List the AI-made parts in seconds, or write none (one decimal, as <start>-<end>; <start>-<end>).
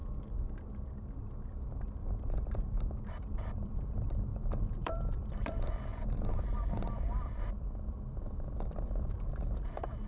3.1-5.9; 7.4-10.1